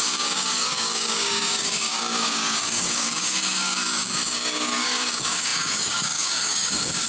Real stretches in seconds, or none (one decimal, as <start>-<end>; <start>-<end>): none